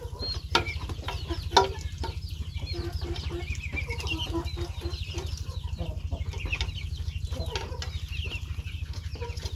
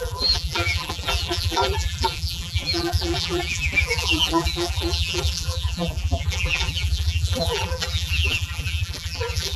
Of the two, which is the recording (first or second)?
first